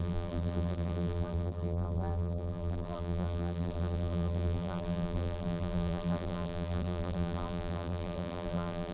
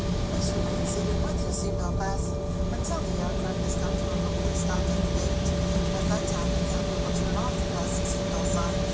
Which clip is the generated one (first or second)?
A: first